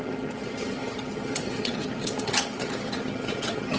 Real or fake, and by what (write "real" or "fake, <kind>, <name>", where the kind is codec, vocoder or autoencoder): fake, vocoder, HiFi-GAN